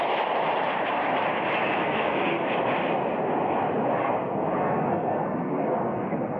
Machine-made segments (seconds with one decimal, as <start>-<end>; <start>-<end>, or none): 1.8-2.5; 4.0-6.4